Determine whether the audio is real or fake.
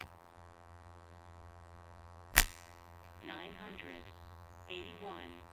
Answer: fake